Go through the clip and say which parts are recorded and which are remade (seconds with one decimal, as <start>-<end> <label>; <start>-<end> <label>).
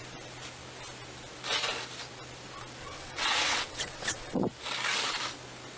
0.0-2.8 recorded; 2.8-4.4 remade; 4.4-5.8 recorded